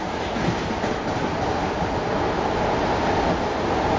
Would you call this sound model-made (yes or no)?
no